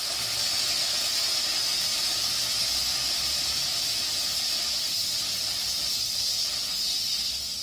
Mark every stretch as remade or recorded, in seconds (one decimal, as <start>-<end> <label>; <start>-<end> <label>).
0.0-1.9 recorded; 1.9-6.5 remade; 6.5-7.6 recorded